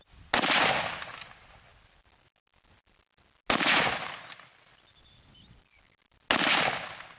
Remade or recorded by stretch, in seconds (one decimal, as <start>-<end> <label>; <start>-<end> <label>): 0.0-7.2 recorded